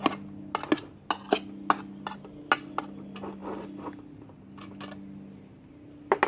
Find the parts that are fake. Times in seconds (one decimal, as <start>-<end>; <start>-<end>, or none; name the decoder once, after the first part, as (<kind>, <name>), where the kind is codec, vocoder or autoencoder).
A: none